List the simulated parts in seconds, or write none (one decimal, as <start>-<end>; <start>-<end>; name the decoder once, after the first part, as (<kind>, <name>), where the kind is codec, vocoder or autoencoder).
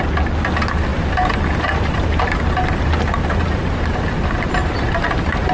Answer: 0.9-2.2 (vocoder, BigVGAN v2); 3.4-3.9; 4.6-5.5